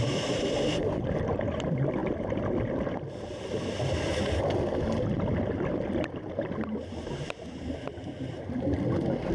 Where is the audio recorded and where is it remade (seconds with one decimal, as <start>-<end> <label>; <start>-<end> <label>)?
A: 0.0-9.3 recorded